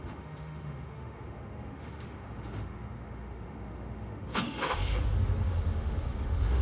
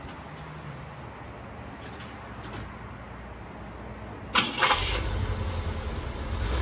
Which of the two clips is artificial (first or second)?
first